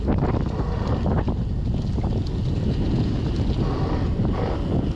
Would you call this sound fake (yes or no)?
no